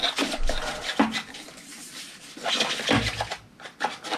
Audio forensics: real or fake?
real